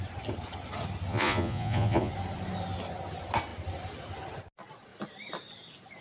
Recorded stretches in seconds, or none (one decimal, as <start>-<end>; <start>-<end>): 0.0-1.1; 2.1-6.0